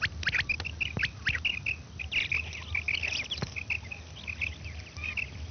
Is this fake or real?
real